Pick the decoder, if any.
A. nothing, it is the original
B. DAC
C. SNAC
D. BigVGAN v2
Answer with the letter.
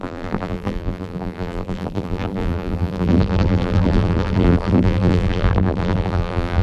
D